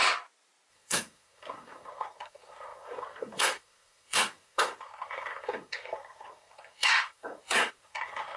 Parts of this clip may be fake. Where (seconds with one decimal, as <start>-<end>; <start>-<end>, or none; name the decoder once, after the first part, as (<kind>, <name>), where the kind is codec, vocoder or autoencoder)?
0.7-8.4 (codec, SNAC)